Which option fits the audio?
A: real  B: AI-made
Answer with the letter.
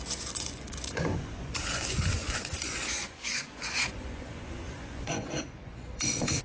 B